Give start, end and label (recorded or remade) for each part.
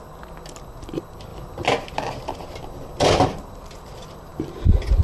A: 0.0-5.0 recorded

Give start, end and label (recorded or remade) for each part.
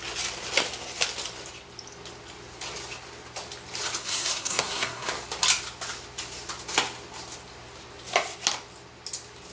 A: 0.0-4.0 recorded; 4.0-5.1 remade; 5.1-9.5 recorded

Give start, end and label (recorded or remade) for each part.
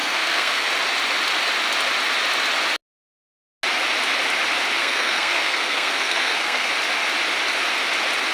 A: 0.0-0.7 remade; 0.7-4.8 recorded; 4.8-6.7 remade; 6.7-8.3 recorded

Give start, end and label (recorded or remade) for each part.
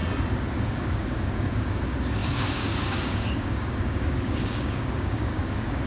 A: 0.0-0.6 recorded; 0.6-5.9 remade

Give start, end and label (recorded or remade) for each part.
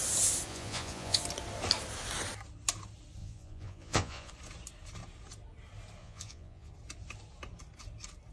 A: 0.0-0.5 recorded; 0.5-1.2 remade; 1.2-3.2 recorded; 3.2-4.3 remade; 4.3-6.0 recorded; 6.0-6.7 remade; 6.7-8.3 recorded